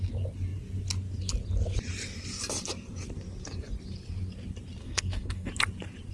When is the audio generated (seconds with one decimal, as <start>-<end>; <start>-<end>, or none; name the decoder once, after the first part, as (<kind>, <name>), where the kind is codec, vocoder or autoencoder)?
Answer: 4.8-5.5 (codec, SNAC)